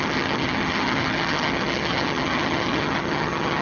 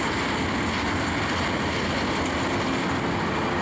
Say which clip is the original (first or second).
second